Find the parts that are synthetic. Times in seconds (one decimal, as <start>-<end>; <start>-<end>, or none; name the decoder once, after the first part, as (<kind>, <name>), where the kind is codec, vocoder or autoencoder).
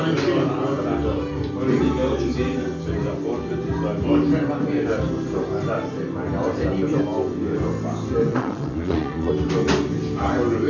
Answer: 8.3-9.3 (vocoder, Vocos)